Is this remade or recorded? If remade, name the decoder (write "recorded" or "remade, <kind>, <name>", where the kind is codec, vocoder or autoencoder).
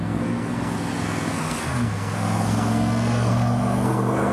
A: remade, codec, SNAC